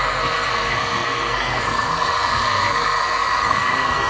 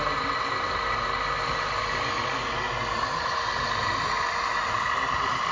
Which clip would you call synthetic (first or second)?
first